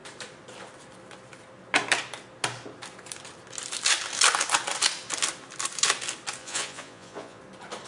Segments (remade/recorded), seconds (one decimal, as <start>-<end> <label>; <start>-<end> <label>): 0.0-6.4 recorded; 6.4-7.4 remade; 7.4-7.9 recorded